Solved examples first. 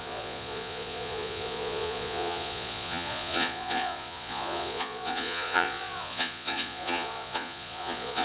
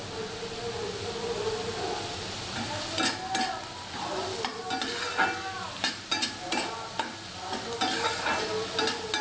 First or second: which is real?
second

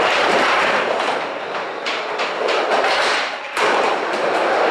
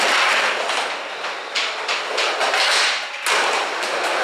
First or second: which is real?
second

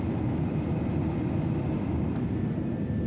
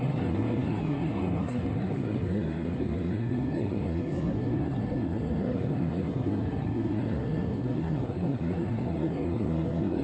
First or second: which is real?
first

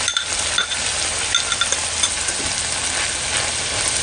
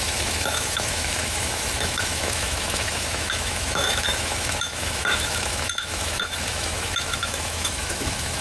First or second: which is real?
first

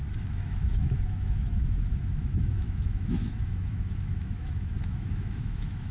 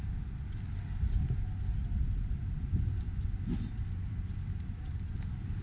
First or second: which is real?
second